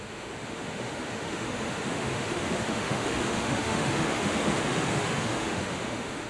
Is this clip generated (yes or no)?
yes